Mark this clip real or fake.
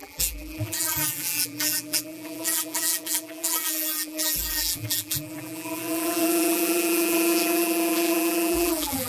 fake